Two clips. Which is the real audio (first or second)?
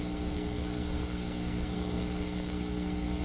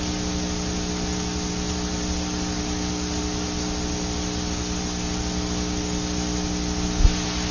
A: second